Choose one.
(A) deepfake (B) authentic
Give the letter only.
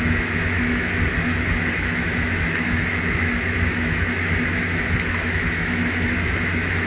A